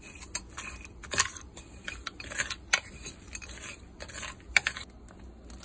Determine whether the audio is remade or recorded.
recorded